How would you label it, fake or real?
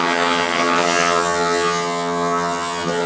fake